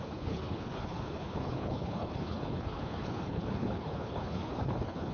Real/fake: fake